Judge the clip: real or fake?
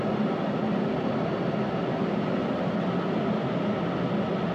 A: fake